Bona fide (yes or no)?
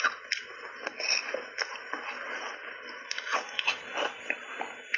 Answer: yes